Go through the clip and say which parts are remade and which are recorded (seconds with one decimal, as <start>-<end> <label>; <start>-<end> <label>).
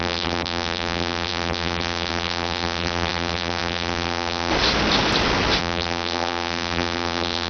0.0-4.5 remade; 4.5-5.6 recorded; 5.6-7.5 remade